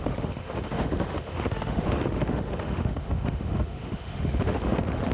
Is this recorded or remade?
remade